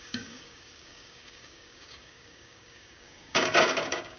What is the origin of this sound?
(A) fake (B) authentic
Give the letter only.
A